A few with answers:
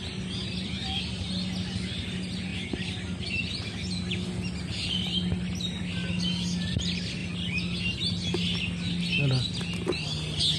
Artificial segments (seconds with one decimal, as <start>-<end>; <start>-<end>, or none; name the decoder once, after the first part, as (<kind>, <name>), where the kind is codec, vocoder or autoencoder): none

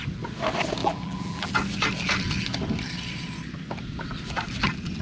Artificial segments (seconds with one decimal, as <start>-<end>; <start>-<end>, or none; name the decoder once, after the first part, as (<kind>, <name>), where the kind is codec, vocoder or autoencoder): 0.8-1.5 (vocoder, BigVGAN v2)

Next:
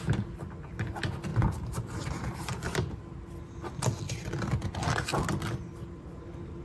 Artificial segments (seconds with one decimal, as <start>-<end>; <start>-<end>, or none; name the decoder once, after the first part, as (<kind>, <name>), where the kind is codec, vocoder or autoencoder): 1.3-2.8 (vocoder, BigVGAN v2)

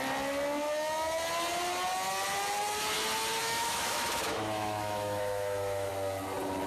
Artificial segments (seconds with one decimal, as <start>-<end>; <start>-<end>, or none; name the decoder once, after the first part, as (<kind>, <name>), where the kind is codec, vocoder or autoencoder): 3.4-5.9 (autoencoder, DAC-VAE)

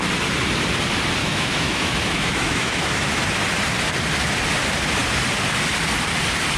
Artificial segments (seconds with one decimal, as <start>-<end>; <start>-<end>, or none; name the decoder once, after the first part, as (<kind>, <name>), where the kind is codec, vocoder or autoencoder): 1.2-3.2 (autoencoder, DAC-VAE)